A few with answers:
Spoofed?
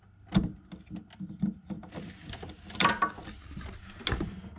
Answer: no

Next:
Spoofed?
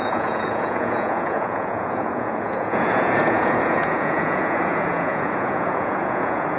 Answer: yes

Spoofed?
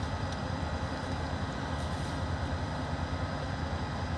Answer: yes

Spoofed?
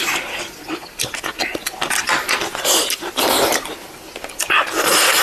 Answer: no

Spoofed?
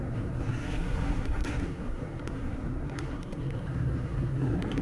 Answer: yes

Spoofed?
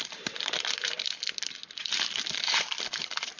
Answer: yes